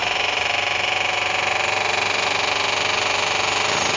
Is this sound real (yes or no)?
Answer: yes